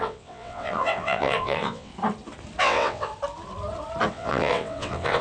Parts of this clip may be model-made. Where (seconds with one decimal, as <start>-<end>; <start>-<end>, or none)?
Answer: 0.0-1.9; 2.6-3.1; 4.1-5.2